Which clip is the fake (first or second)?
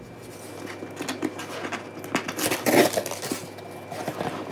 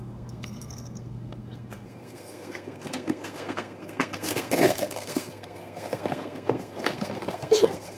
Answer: second